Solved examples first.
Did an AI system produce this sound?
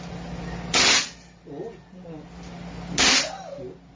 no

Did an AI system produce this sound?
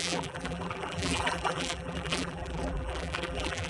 yes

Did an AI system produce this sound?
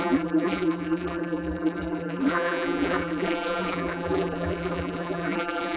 yes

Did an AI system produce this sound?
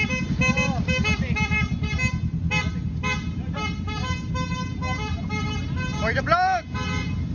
no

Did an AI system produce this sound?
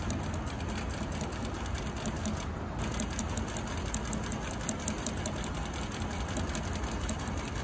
no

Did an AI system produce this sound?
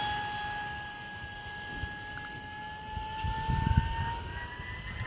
no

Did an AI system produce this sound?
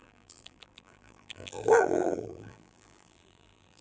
yes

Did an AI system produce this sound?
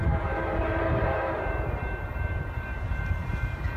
yes